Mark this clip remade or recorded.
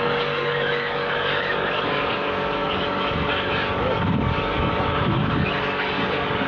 remade